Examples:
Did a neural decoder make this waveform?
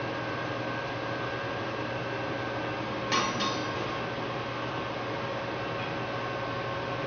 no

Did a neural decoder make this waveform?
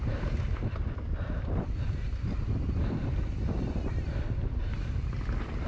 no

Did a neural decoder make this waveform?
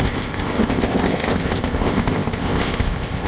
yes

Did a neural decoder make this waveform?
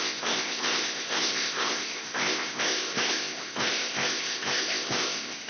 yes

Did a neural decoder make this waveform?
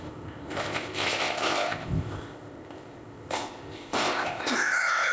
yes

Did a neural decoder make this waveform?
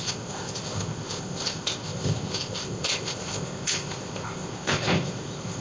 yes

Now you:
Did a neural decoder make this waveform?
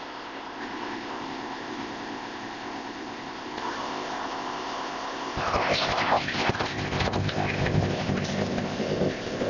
yes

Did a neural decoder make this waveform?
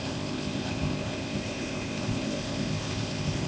yes